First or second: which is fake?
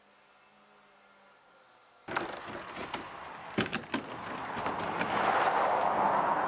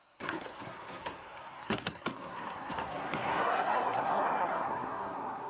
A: second